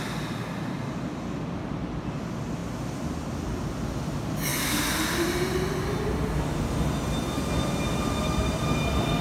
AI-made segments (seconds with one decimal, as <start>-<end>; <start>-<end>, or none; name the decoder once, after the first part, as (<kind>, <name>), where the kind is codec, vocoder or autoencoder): none